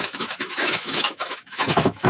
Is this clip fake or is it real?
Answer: fake